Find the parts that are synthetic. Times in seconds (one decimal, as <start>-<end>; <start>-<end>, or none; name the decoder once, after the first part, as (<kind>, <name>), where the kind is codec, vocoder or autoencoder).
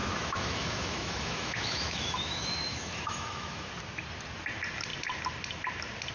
0.0-3.7 (autoencoder, DAC-VAE)